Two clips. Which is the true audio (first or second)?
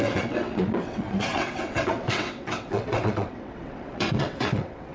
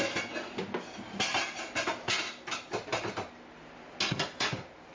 second